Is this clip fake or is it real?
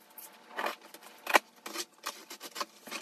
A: fake